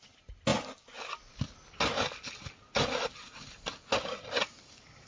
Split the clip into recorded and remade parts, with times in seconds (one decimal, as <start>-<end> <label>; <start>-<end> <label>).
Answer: 0.0-5.1 recorded